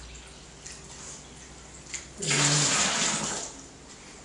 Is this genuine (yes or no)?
yes